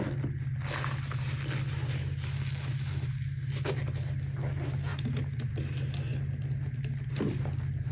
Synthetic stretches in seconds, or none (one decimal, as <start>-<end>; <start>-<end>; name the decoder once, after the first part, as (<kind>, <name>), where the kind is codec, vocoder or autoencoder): none